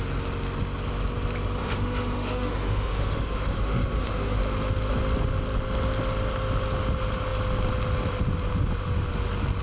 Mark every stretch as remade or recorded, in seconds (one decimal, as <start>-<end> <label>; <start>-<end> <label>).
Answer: 0.0-1.6 recorded; 1.6-4.4 remade; 4.4-9.6 recorded